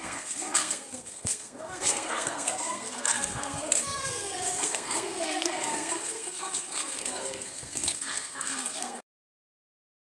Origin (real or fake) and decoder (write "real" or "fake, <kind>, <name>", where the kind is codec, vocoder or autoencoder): fake, codec, SNAC